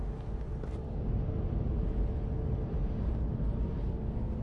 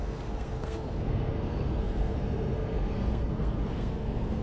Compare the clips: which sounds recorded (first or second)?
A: first